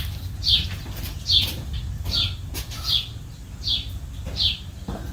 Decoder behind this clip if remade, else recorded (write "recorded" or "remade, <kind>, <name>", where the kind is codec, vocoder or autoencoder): recorded